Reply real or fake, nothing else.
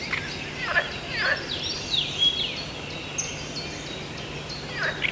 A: real